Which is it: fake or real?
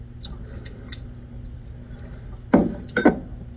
real